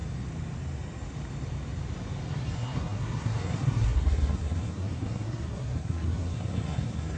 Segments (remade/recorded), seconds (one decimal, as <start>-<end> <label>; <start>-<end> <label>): 0.0-2.3 recorded; 2.3-7.2 remade